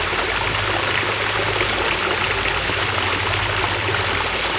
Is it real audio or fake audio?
real